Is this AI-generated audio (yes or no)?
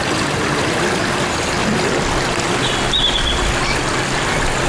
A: no